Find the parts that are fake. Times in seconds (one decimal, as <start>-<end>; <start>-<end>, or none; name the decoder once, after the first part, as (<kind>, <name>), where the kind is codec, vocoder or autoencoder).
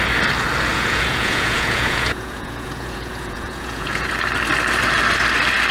0.7-4.1 (vocoder, Vocos)